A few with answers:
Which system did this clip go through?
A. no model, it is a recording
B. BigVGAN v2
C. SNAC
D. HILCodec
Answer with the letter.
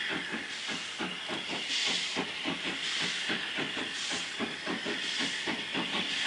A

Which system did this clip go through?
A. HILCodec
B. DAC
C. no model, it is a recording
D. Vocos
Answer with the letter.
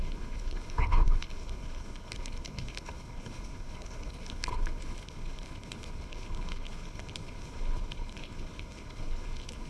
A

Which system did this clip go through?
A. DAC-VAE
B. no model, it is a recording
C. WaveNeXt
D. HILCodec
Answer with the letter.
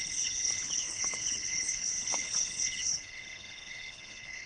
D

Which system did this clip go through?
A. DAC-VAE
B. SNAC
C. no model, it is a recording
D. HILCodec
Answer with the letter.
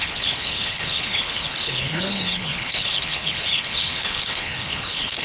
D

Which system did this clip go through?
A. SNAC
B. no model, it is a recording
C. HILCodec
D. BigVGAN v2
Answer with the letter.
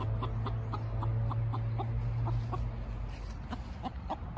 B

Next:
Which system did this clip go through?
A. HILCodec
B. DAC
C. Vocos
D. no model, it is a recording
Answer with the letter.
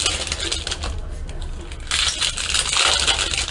D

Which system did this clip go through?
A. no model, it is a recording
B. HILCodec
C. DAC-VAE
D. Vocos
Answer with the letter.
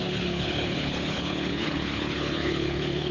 B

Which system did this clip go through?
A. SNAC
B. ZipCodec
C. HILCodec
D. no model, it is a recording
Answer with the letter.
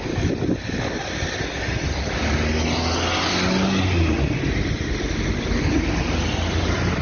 D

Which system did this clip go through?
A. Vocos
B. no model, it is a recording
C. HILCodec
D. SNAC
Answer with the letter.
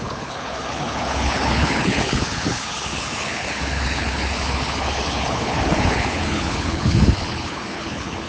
C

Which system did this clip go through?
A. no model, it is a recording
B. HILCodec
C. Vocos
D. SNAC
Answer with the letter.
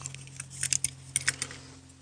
A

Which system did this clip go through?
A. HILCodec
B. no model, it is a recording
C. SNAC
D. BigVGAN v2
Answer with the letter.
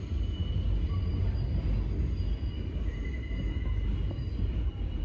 B